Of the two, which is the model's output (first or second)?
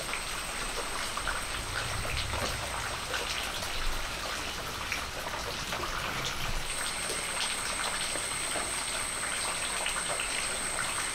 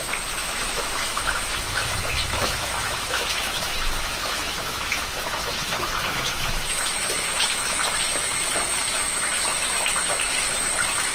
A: second